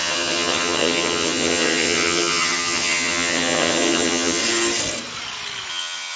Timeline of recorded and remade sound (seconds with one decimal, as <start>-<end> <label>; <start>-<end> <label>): 0.0-4.4 remade; 4.4-5.7 recorded; 5.7-6.2 remade